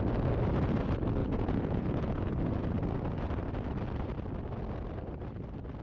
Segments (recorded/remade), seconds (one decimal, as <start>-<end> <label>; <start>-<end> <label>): 0.0-1.2 recorded; 1.2-2.3 remade; 2.3-5.8 recorded